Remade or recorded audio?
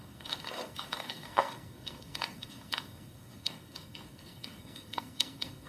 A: remade